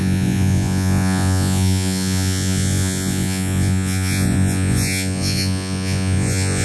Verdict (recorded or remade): remade